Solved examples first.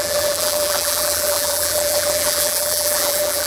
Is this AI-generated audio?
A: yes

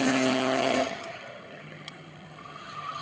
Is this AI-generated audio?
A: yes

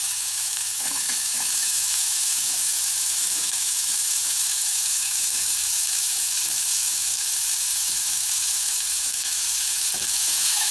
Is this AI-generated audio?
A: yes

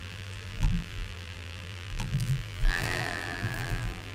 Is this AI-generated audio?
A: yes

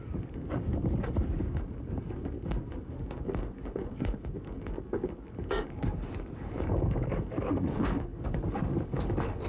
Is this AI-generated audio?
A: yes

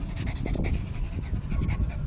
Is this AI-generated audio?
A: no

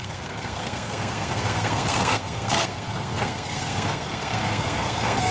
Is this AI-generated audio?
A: yes